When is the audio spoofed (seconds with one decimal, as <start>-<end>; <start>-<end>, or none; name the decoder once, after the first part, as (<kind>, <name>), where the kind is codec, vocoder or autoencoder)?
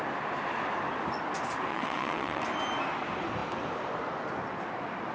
1.7-2.4 (vocoder, WaveNeXt)